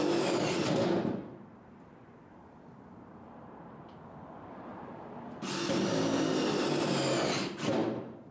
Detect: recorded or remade recorded